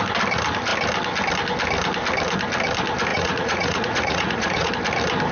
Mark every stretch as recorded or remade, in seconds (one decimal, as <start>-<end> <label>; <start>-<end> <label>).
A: 0.0-3.1 recorded; 3.1-4.7 remade; 4.7-5.3 recorded